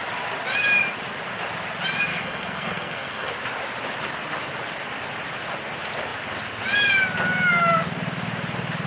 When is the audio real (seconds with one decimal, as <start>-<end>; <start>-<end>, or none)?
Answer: 0.0-2.1; 3.3-8.9